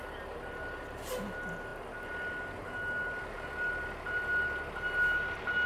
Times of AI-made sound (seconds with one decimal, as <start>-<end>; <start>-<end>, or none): none